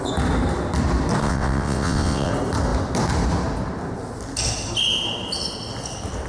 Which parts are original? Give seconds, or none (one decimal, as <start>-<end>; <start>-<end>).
0.0-1.2; 2.3-6.3